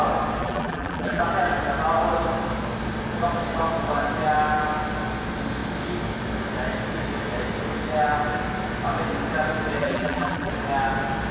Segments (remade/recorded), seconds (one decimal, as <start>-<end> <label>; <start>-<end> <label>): 0.0-0.4 recorded; 0.4-1.2 remade; 1.2-9.8 recorded; 9.8-10.5 remade; 10.5-11.3 recorded